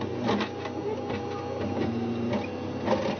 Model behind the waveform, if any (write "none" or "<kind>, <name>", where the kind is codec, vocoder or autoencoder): none